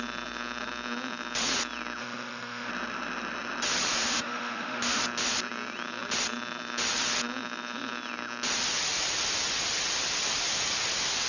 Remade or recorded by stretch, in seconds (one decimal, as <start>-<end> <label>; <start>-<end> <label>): 0.0-2.0 recorded; 2.0-2.7 remade; 2.7-4.0 recorded; 4.0-5.0 remade; 5.0-11.3 recorded